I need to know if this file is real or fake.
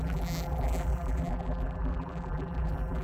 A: fake